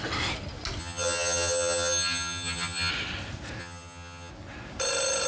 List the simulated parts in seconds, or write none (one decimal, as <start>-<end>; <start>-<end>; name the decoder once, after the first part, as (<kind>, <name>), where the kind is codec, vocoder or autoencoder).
0.8-2.9 (vocoder, HiFi-GAN); 3.6-4.3